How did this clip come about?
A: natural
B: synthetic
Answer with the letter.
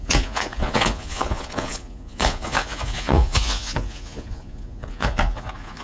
B